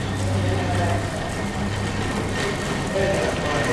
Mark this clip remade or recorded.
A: recorded